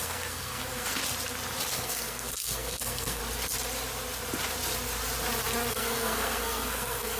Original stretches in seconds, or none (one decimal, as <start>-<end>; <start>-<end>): 1.0-1.7; 3.2-5.7